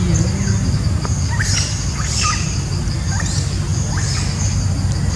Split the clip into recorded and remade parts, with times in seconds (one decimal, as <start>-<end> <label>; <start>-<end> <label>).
0.0-5.2 recorded